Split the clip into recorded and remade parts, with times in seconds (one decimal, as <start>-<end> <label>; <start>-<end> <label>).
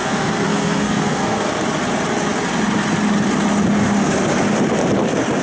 0.0-1.5 remade; 1.5-5.4 recorded